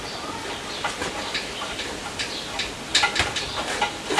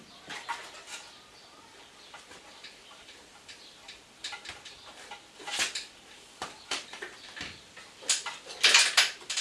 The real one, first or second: first